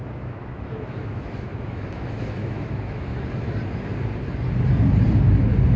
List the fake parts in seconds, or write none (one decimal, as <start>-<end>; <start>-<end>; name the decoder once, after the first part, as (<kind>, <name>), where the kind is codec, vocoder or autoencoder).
0.0-3.1 (autoencoder, DAC-VAE)